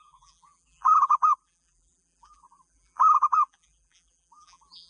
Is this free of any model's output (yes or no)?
no